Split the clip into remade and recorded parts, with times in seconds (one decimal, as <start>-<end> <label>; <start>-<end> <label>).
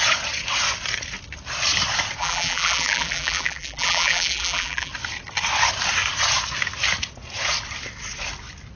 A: 0.0-2.2 recorded; 2.2-4.9 remade; 4.9-8.8 recorded